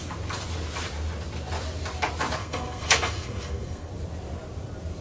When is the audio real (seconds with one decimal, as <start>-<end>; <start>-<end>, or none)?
0.0-2.4; 3.9-5.0